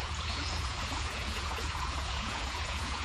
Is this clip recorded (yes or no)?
no